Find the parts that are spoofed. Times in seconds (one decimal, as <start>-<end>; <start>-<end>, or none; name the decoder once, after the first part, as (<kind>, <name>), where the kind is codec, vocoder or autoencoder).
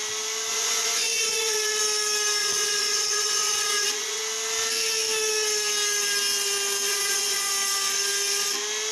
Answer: 0.5-1.8 (vocoder, Vocos); 2.4-4.2; 6.9-7.5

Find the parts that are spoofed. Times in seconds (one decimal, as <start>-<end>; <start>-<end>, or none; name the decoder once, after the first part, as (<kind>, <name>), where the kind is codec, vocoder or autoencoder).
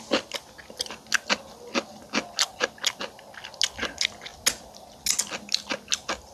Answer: none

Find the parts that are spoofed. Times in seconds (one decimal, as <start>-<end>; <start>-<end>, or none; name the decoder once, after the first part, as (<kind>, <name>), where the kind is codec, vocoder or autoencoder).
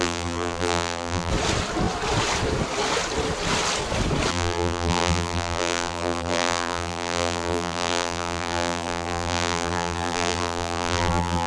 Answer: 0.0-1.3 (vocoder, BigVGAN v2); 4.3-11.5